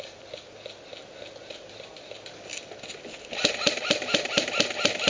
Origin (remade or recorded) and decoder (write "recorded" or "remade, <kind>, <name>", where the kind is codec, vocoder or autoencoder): recorded